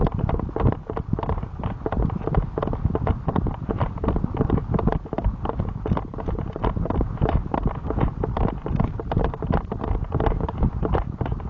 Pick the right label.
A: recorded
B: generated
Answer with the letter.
A